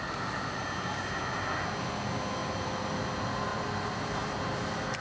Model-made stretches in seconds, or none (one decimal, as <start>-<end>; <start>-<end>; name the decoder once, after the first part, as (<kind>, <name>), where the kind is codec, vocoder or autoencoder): 2.4-3.0 (vocoder, BigVGAN v2); 3.5-5.0

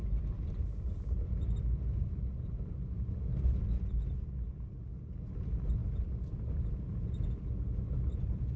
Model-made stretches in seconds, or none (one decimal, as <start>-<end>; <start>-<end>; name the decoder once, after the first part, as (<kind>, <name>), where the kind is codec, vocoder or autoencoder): 0.0-3.6 (vocoder, BigVGAN v2); 5.8-6.6

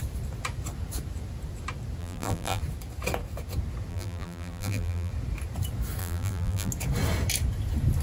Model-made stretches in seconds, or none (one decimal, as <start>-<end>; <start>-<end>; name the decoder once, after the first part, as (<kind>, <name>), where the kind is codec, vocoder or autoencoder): 2.0-2.6 (vocoder, BigVGAN v2); 3.9-5.1; 6.0-6.7

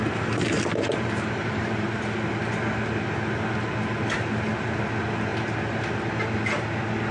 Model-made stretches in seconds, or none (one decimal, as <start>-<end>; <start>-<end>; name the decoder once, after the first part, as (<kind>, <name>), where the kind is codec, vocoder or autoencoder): 0.9-2.0 (vocoder, BigVGAN v2)

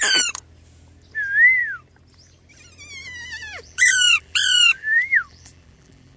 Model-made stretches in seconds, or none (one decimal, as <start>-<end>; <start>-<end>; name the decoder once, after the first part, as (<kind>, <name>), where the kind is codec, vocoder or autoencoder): 3.0-6.2 (vocoder, BigVGAN v2)

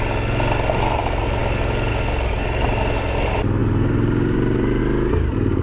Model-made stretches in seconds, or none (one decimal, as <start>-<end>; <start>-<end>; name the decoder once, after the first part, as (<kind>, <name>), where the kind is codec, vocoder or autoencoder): 3.6-4.8 (vocoder, BigVGAN v2)

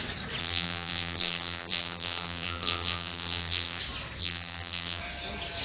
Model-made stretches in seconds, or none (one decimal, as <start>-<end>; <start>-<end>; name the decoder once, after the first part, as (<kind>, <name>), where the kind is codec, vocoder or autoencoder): 0.4-3.8 (vocoder, BigVGAN v2); 4.2-5.0